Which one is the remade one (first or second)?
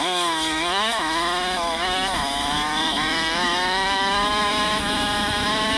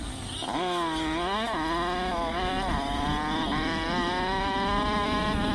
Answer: first